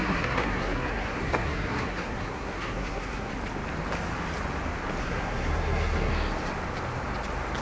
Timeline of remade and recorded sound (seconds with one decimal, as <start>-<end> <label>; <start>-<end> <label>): 0.0-3.3 remade; 3.3-5.0 recorded; 5.0-6.1 remade; 6.1-7.6 recorded